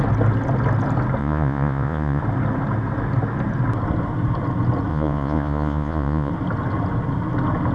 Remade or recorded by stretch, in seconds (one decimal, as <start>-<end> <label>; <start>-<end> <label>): 0.0-1.2 recorded; 1.2-2.2 remade; 2.2-4.9 recorded; 4.9-6.3 remade; 6.3-7.7 recorded